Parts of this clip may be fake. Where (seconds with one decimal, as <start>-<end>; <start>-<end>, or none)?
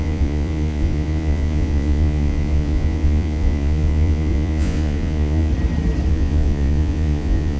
0.0-5.5; 6.1-7.6